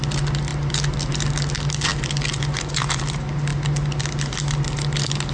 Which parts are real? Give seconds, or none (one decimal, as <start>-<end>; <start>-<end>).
0.0-5.3